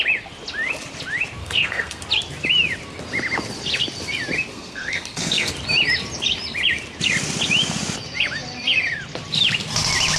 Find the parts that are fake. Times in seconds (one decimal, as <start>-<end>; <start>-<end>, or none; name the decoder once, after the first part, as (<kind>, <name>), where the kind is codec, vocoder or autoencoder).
1.4-2.0 (codec, SNAC); 4.5-5.5